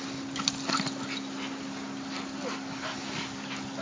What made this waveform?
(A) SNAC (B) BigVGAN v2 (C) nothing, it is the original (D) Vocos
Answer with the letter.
C